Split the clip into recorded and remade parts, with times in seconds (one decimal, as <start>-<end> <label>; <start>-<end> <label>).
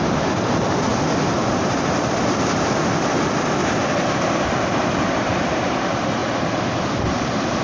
0.0-0.9 remade; 0.9-1.6 recorded; 1.6-3.6 remade; 3.6-4.5 recorded; 4.5-6.2 remade; 6.2-6.8 recorded; 6.8-7.6 remade